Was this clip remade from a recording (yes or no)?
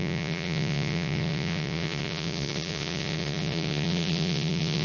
yes